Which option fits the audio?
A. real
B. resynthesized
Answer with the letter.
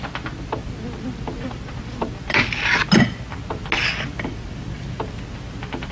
A